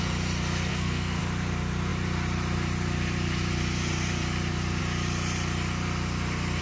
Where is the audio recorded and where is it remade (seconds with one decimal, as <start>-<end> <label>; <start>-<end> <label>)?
0.0-0.7 recorded; 0.7-1.2 remade; 1.2-6.6 recorded